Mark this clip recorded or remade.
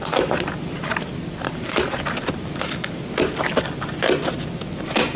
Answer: recorded